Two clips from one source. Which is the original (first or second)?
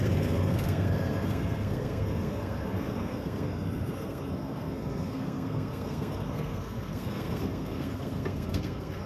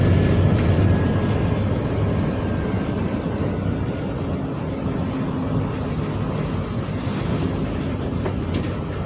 second